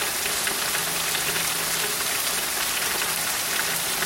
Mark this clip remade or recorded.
recorded